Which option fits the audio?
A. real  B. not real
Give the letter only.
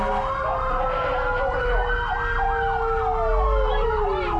A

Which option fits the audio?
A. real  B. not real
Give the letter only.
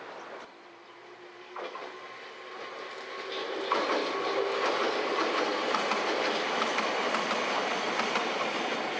A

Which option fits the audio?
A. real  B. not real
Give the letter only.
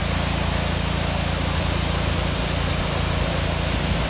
A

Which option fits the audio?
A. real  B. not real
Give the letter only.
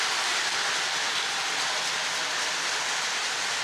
B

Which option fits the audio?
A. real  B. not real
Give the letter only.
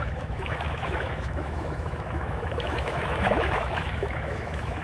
B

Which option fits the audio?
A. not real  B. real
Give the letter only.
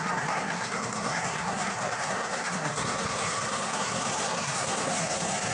A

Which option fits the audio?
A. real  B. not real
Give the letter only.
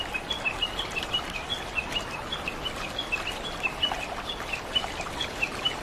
A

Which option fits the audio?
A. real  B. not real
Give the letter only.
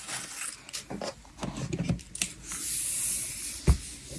A